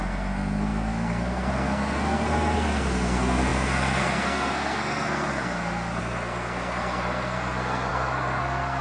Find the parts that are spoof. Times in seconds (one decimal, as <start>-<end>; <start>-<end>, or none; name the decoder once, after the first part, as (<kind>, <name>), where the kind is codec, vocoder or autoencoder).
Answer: 0.0-8.8 (codec, SNAC)